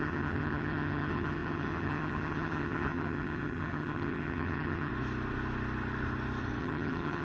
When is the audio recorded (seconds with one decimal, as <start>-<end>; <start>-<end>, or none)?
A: 4.9-6.6